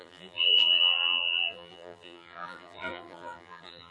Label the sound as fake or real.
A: fake